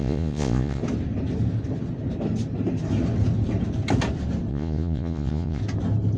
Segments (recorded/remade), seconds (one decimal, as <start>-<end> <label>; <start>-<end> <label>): 0.0-0.8 remade; 0.8-4.5 recorded; 4.5-5.6 remade; 5.6-6.2 recorded